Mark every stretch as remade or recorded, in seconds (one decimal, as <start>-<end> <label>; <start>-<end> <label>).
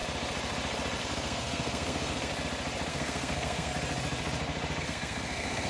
0.0-1.0 recorded; 1.0-2.3 remade; 2.3-2.9 recorded; 2.9-3.7 remade; 3.7-4.8 recorded; 4.8-5.7 remade